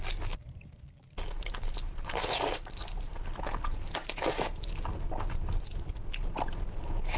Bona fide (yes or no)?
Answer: yes